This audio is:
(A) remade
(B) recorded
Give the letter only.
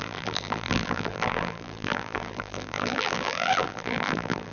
A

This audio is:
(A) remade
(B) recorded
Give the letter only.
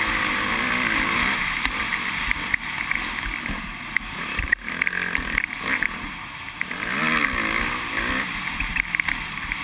B